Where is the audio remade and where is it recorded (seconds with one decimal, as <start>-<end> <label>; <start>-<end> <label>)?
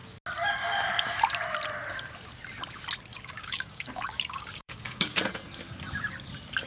0.0-3.1 recorded; 3.1-5.1 remade; 5.1-6.7 recorded